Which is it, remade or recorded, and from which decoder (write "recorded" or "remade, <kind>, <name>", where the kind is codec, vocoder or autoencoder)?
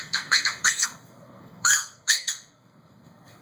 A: remade, codec, SNAC